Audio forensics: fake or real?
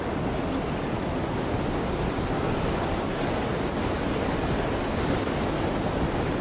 real